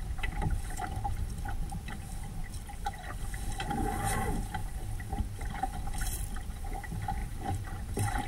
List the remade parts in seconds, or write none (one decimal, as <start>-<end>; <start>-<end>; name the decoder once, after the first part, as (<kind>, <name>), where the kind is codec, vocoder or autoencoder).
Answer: 7.2-8.3 (vocoder, BigVGAN v2)